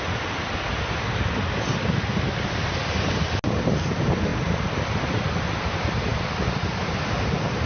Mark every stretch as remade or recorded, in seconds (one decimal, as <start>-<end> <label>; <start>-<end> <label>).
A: 0.0-7.7 recorded